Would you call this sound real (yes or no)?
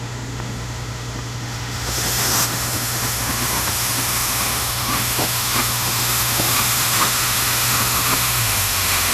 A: no